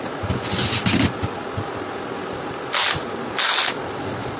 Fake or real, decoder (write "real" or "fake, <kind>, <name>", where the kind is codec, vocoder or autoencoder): real